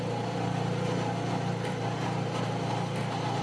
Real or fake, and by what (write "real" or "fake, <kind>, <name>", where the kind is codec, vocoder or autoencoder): real